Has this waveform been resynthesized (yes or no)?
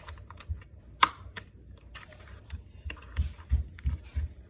yes